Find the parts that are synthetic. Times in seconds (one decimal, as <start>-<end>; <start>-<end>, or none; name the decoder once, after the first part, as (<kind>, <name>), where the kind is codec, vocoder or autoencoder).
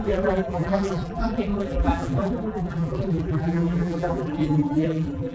0.0-5.3 (vocoder, BigVGAN v2)